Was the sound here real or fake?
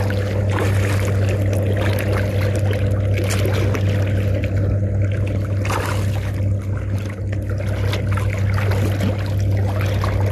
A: real